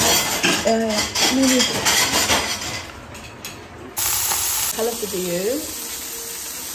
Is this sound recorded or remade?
recorded